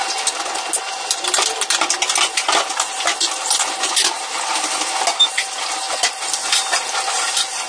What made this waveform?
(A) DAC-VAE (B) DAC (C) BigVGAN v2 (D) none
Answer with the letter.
D